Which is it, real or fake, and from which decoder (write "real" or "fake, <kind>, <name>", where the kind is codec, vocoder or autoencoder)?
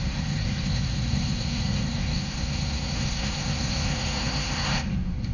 fake, codec, SNAC